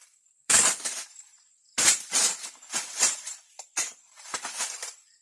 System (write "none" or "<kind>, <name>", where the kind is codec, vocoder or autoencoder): vocoder, BigVGAN v2